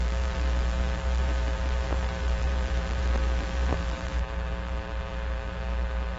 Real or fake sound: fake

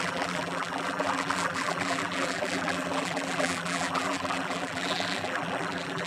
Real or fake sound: fake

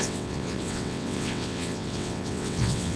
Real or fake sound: fake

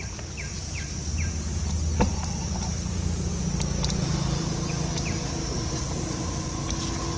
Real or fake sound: real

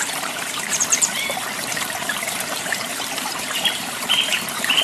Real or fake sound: fake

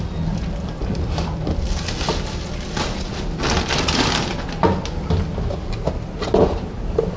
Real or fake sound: real